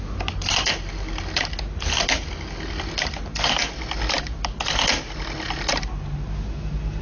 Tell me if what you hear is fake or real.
real